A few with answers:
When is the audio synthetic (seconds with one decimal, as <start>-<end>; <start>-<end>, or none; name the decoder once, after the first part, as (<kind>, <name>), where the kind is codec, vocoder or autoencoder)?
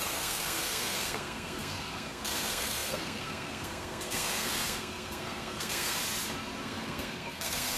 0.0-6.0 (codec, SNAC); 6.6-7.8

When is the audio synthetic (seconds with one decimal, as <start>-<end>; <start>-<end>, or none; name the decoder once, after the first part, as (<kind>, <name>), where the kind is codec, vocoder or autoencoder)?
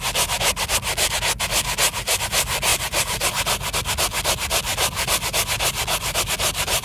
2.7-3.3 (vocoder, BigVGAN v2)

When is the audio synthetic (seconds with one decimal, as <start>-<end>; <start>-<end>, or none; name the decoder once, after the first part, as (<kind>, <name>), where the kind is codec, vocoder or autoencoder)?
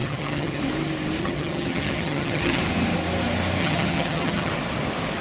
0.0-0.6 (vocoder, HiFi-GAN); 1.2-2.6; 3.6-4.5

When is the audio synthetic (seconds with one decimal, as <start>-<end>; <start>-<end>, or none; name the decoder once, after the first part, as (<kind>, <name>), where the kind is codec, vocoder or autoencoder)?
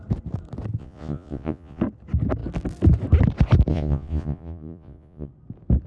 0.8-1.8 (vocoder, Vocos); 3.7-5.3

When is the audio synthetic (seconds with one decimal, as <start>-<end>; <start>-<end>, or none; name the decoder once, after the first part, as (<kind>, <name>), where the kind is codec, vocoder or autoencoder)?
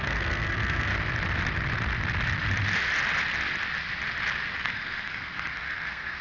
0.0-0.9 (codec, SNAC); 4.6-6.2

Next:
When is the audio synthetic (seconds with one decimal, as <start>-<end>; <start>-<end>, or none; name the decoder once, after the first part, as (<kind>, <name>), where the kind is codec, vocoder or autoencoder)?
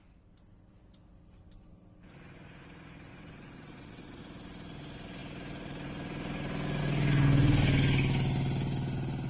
3.1-4.2 (vocoder, WaveNeXt)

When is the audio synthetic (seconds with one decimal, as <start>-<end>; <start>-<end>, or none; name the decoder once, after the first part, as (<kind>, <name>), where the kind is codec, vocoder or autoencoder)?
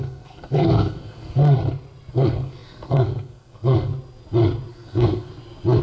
0.0-1.4 (codec, SNAC); 2.1-3.9; 4.7-5.3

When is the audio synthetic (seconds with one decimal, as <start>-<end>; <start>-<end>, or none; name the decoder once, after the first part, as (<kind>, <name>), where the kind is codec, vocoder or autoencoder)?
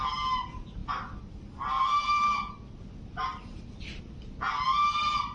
none